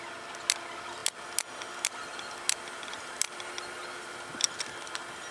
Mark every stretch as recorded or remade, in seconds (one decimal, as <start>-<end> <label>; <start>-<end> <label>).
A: 0.0-5.3 recorded